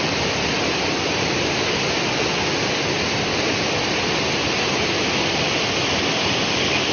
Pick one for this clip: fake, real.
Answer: real